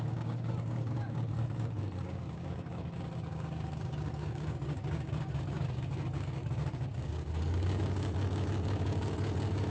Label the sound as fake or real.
fake